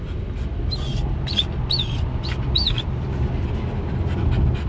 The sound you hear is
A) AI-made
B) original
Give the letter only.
B